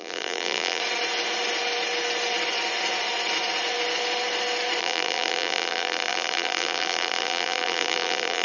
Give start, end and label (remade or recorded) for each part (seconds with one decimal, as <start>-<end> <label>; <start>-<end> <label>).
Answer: 0.0-0.8 remade; 0.8-4.8 recorded; 4.8-8.4 remade